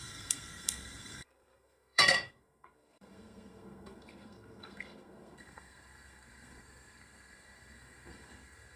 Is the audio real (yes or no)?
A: no